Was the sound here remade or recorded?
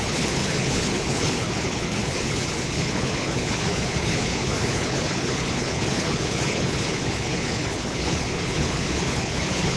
remade